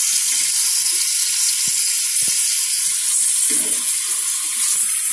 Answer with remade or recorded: recorded